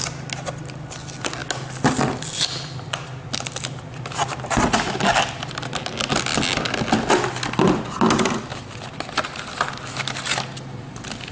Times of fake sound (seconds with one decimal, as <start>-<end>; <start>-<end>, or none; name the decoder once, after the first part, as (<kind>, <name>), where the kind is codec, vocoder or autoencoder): none